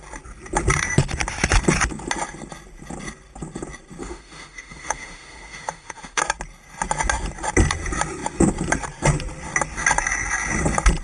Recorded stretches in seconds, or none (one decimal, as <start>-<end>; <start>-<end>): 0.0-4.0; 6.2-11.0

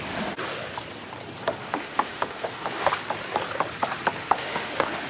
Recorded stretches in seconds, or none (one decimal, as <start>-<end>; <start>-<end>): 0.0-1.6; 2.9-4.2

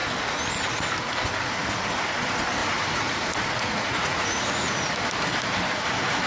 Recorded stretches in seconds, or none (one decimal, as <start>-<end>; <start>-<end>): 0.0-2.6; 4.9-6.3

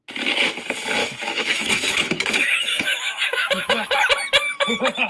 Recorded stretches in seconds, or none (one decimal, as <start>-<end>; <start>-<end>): 0.0-1.0; 4.1-5.1

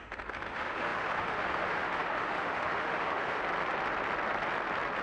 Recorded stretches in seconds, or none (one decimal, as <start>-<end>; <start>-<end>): 3.4-5.0